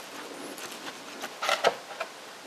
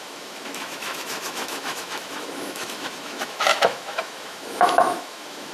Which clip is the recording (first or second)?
first